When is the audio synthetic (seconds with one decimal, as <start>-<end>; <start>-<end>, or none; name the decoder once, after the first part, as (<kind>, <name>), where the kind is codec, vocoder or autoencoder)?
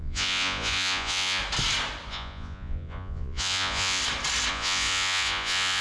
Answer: 0.0-1.4 (vocoder, Vocos); 2.1-4.0; 4.5-5.8